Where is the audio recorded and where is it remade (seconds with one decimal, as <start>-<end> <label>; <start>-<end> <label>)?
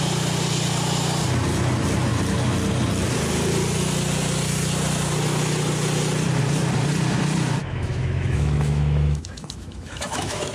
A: 0.0-7.6 recorded; 7.6-10.5 remade